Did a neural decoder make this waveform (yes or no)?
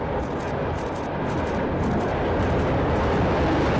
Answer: no